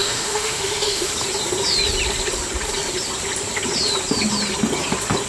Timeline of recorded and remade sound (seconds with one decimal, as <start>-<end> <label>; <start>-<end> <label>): 0.0-1.1 remade; 1.1-5.3 recorded